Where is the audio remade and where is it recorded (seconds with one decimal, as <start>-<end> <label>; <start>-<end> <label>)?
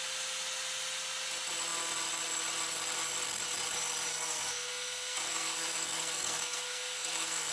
0.0-4.1 recorded; 4.1-7.5 remade